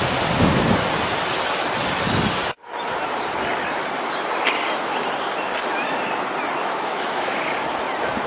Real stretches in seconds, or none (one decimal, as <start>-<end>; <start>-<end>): 0.0-6.6; 7.4-8.3